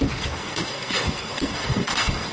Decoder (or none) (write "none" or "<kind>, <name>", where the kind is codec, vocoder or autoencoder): codec, SNAC